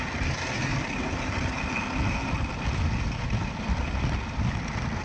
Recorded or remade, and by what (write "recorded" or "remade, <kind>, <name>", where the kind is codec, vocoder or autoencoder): recorded